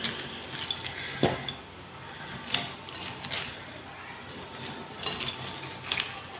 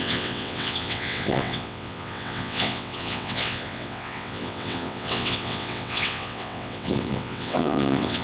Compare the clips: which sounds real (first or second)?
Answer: first